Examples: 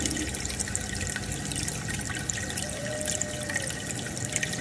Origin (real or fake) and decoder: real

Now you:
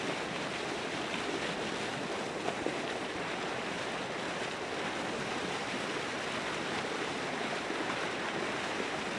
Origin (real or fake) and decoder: real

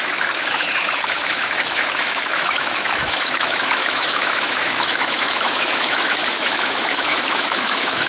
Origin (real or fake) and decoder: fake, autoencoder, DAC-VAE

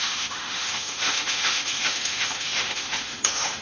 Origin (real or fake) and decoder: fake, autoencoder, DAC-VAE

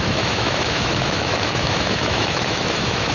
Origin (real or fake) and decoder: fake, autoencoder, DAC-VAE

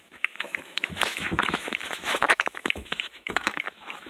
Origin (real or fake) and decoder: fake, autoencoder, DAC-VAE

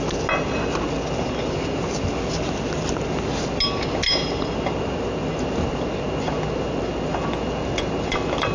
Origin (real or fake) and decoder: real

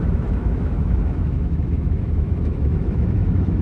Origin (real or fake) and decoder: fake, autoencoder, DAC-VAE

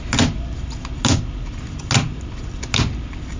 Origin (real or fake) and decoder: real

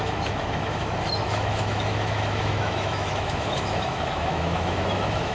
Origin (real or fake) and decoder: fake, autoencoder, DAC-VAE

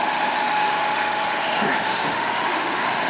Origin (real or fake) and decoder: fake, autoencoder, DAC-VAE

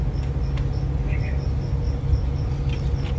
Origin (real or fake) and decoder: real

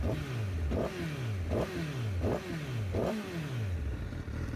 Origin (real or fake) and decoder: real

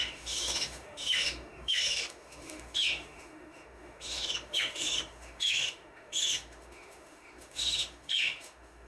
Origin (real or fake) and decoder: fake, autoencoder, DAC-VAE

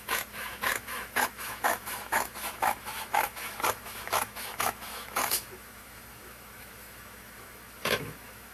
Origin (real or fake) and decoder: fake, autoencoder, DAC-VAE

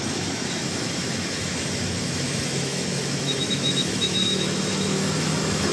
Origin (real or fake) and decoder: fake, autoencoder, DAC-VAE